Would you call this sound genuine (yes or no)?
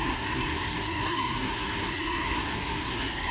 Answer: no